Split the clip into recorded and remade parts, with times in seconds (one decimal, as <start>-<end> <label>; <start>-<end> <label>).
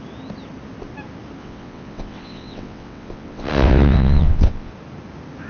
0.0-1.4 recorded; 1.4-4.7 remade; 4.7-5.5 recorded